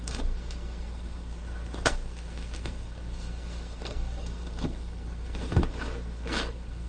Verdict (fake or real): fake